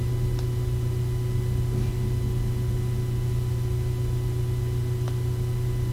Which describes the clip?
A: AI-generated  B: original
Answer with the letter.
B